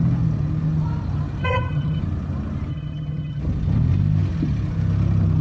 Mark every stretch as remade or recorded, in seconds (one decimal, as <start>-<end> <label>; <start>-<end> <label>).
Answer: 0.0-1.4 recorded; 1.4-2.0 remade; 2.0-2.7 recorded; 2.7-3.4 remade; 3.4-5.4 recorded